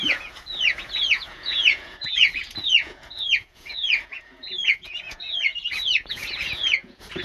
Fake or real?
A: fake